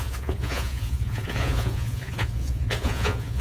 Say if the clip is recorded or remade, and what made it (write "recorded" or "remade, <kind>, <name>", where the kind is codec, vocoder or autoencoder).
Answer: remade, vocoder, Vocos